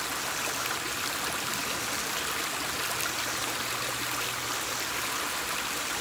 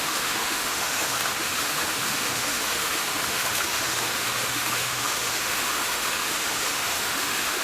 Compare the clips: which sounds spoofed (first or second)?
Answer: second